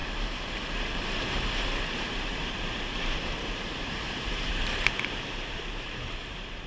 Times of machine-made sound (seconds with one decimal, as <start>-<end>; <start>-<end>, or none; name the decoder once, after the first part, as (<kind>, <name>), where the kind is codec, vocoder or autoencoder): 0.6-6.7 (vocoder, BigVGAN v2)